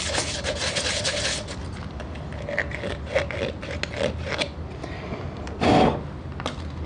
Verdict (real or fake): real